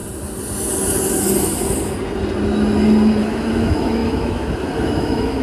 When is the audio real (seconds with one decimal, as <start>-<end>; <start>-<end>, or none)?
0.0-3.2